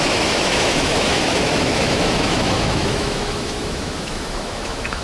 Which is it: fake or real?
fake